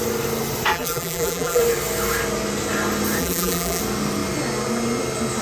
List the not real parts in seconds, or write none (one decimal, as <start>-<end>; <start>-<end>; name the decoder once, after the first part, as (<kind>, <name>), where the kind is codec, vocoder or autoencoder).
0.7-1.6 (vocoder, BigVGAN v2); 3.2-3.8